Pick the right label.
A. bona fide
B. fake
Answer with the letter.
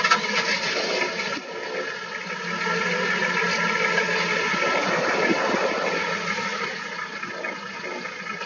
A